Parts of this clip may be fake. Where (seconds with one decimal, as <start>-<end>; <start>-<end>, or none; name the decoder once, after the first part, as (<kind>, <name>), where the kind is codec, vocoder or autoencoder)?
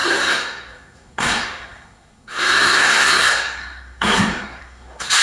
0.0-5.2 (codec, SNAC)